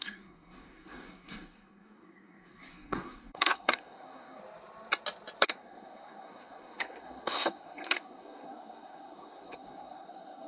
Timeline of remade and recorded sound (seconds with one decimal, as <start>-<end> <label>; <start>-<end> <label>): 0.0-4.4 remade; 4.4-5.4 recorded; 5.4-10.5 remade